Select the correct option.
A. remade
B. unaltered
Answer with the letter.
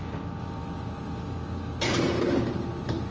A